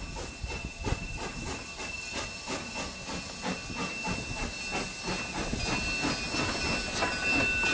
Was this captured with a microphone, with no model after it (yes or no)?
yes